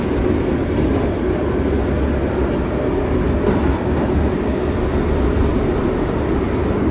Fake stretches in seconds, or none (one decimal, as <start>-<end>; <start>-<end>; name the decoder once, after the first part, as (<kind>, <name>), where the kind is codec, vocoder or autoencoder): 5.5-6.9 (vocoder, BigVGAN v2)